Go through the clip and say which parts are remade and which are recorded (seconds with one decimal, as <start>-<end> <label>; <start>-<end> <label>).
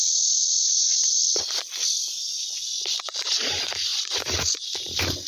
0.0-5.3 recorded